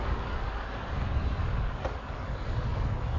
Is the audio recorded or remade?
remade